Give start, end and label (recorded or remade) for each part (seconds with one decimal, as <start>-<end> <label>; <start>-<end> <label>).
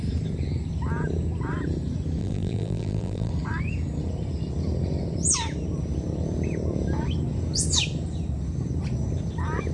0.0-2.2 recorded; 2.2-3.3 remade; 3.3-9.7 recorded